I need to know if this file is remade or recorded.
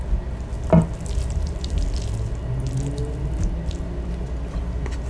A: recorded